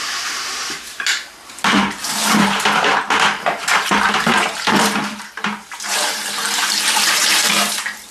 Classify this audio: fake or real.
fake